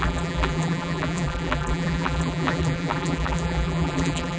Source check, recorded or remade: remade